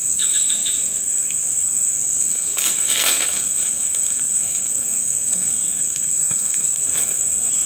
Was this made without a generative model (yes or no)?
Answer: no